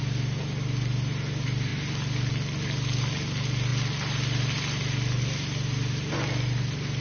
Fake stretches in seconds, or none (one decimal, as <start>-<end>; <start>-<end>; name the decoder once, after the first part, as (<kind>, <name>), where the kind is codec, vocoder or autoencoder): none

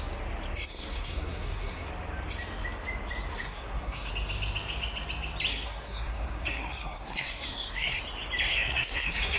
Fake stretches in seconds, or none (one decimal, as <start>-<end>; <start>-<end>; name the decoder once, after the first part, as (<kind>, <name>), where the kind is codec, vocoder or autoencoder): 0.7-1.9 (codec, SNAC); 3.3-4.1; 5.5-8.0; 8.5-9.4